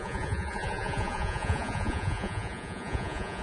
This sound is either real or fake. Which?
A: fake